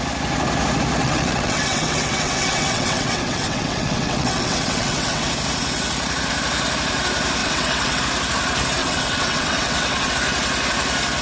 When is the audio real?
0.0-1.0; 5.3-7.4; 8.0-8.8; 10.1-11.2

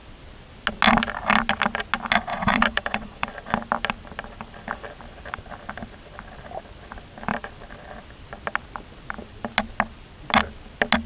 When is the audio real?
0.0-2.3; 3.3-11.1

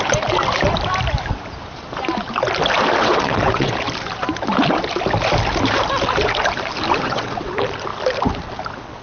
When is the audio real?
0.0-3.0; 3.7-7.0; 7.5-9.0

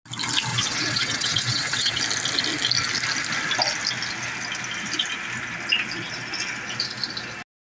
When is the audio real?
0.0-0.5; 2.0-7.6